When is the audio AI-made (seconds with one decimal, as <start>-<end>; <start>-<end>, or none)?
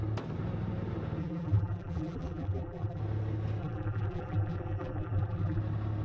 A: 1.2-3.0; 3.6-5.6